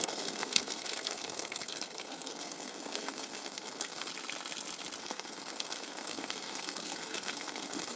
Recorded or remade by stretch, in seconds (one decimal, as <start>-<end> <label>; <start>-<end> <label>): 0.0-4.1 remade; 4.1-5.0 recorded; 5.0-8.0 remade